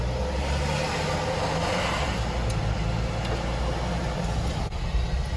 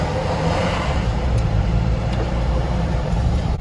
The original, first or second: first